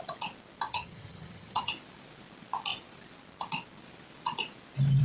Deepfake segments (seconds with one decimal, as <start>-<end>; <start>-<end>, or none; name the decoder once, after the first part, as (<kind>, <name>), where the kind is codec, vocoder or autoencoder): 0.7-1.7 (vocoder, HiFi-GAN)